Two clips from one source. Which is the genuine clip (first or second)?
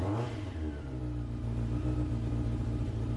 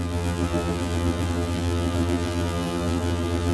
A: first